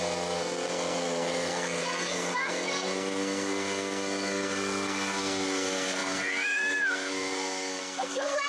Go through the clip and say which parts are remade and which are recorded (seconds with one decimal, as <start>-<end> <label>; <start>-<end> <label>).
0.0-8.5 remade